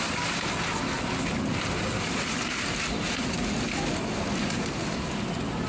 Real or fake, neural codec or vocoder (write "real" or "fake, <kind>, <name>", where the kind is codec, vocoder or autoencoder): real